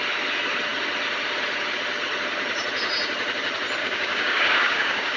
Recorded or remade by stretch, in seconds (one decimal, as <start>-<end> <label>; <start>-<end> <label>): 0.0-3.8 recorded; 3.8-5.2 remade